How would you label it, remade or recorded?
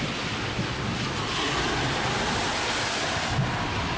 recorded